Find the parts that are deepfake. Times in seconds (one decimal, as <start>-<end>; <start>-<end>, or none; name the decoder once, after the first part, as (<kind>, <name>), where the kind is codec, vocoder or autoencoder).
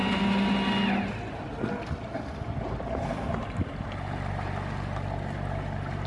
none